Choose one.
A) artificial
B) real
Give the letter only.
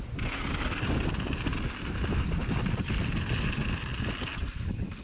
B